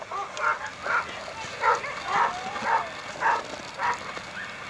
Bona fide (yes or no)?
yes